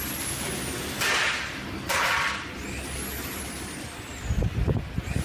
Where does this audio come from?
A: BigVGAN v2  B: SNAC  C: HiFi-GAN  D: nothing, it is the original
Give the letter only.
A